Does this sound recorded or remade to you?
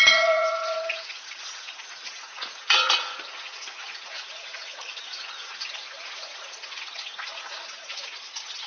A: remade